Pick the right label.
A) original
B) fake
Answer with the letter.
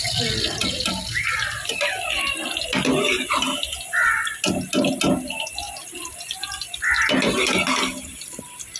A